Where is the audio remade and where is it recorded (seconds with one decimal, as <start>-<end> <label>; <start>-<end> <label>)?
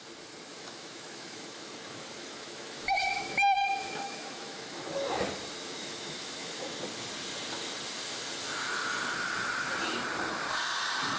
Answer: 0.0-0.5 recorded; 0.5-5.2 remade; 5.2-5.7 recorded; 5.7-6.8 remade; 6.8-11.2 recorded